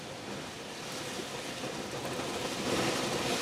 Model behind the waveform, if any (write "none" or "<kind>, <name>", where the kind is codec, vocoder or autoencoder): none